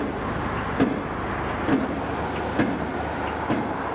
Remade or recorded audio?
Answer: recorded